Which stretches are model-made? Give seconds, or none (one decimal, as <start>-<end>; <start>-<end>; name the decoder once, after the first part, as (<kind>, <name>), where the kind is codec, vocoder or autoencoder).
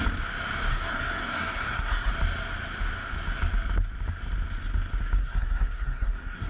0.7-2.1 (codec, SNAC); 5.2-6.5